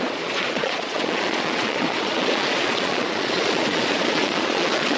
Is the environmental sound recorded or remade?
remade